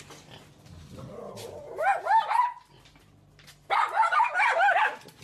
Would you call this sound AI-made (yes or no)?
no